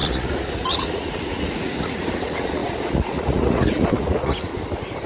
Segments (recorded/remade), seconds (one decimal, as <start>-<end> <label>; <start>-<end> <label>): 0.0-4.5 remade; 4.5-5.1 recorded